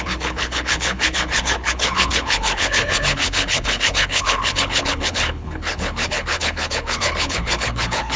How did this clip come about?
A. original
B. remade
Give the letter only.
B